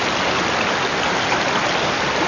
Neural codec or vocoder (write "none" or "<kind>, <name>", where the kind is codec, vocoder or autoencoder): none